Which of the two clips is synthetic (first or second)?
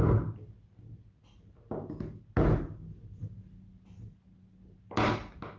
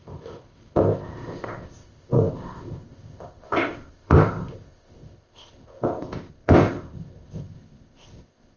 second